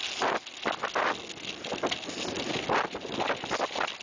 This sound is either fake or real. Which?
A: real